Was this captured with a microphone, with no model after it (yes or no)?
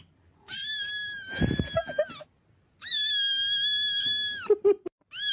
yes